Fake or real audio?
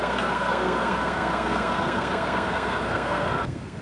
fake